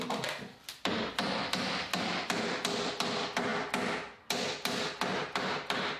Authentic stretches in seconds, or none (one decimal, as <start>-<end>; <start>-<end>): 0.0-6.0